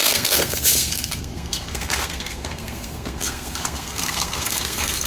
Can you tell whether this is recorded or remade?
remade